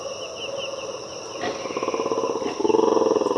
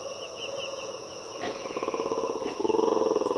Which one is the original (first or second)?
first